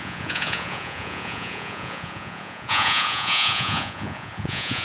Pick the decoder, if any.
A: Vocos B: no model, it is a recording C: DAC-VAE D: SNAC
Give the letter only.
A